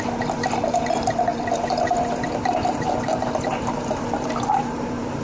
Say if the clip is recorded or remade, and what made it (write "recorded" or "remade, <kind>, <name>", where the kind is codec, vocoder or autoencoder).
remade, vocoder, BigVGAN v2